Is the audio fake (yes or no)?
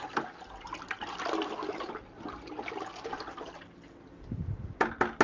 no